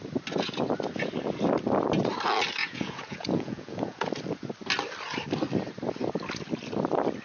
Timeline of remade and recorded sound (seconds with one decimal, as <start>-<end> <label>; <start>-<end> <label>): 0.0-2.6 recorded; 2.6-4.1 remade; 4.1-7.2 recorded